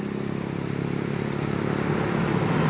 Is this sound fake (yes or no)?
no